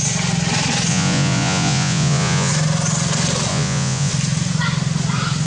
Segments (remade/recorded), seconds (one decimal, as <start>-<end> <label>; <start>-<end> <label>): 0.0-0.9 recorded; 0.9-2.5 remade; 2.5-3.5 recorded; 3.5-4.1 remade; 4.1-5.5 recorded